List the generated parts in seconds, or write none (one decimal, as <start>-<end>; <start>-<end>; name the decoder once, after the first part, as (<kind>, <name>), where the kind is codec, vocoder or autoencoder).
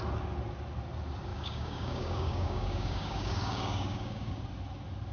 1.3-4.4 (codec, DAC)